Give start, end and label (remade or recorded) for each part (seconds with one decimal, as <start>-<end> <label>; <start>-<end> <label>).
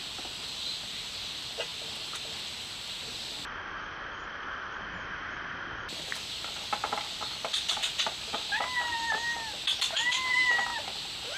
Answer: 0.0-1.7 recorded; 1.7-2.4 remade; 2.4-10.7 recorded; 10.7-11.4 remade